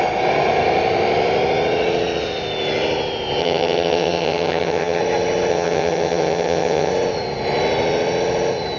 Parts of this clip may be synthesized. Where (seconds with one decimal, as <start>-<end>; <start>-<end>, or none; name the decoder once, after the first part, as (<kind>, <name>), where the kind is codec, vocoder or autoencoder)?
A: 3.4-5.0 (vocoder, HiFi-GAN); 5.5-6.9